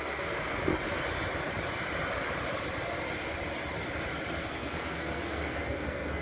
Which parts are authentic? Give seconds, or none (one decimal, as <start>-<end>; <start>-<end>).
0.7-4.4